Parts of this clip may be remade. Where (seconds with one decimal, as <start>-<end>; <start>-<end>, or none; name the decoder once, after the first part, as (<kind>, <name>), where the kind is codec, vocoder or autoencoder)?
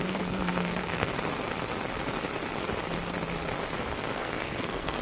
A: 0.0-1.1 (codec, SNAC); 4.1-5.0